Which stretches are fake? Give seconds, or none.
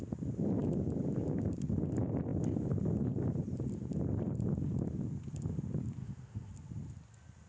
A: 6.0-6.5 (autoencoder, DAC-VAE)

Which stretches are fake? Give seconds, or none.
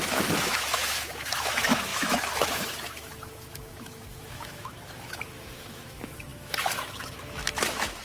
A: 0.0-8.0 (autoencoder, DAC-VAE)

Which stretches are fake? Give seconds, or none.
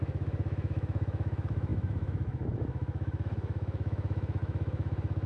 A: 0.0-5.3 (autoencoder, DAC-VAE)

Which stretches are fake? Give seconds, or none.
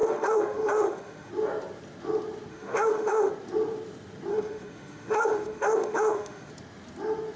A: 0.0-1.3 (autoencoder, DAC-VAE); 2.5-3.3; 4.3-6.5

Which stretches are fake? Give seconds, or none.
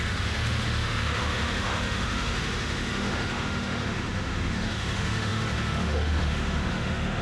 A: 0.0-7.2 (autoencoder, DAC-VAE)